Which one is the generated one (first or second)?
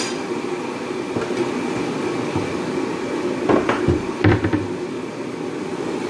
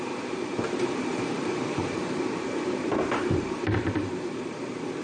second